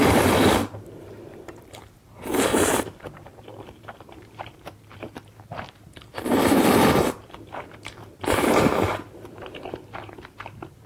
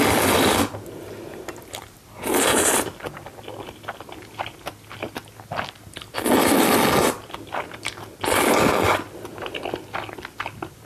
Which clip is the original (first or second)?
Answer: second